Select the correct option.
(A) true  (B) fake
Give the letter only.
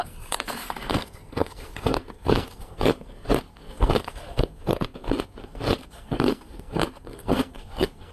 B